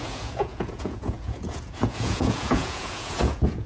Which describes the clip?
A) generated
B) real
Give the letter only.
A